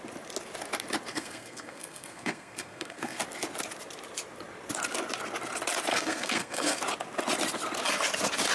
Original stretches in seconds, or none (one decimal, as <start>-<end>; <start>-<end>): 0.0-1.1; 3.2-5.9; 6.8-8.5